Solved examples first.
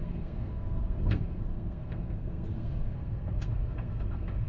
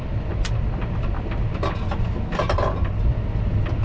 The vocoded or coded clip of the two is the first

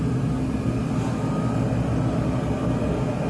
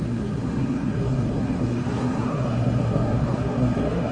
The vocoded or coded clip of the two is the second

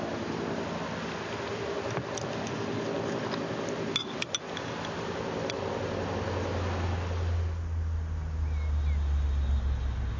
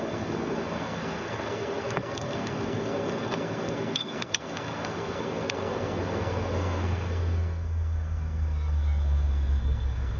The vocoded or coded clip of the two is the second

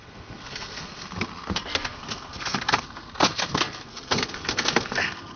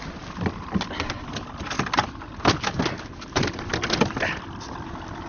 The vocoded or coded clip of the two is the first